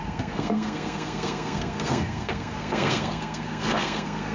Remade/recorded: remade